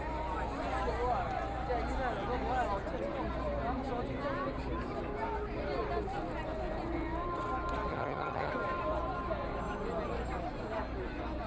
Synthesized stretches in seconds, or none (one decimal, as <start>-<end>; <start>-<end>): 7.9-8.5